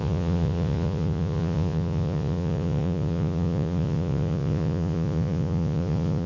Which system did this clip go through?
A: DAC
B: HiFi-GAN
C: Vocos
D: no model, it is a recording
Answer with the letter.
C